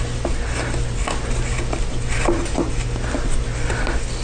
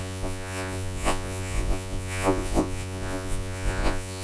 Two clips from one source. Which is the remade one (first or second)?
second